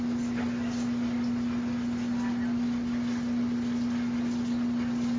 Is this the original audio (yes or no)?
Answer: yes